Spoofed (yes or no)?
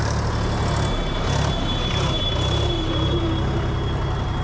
no